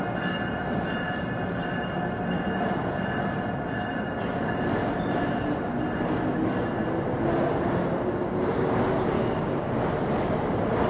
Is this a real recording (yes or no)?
yes